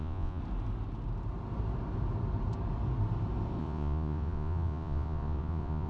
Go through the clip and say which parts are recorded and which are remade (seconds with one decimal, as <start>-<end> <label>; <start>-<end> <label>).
0.0-0.4 remade; 0.4-3.6 recorded; 3.6-5.9 remade